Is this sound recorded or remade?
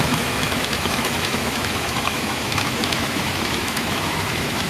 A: remade